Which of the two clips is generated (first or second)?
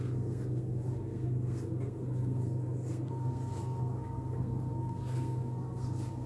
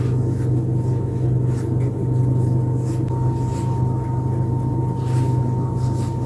first